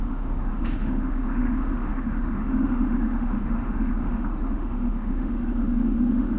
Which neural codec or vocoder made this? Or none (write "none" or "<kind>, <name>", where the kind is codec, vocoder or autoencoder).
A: autoencoder, DAC-VAE